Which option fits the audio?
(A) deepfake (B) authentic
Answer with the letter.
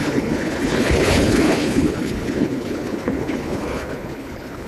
A